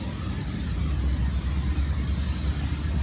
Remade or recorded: recorded